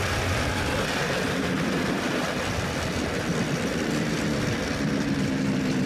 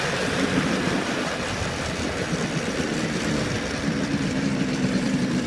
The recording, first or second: first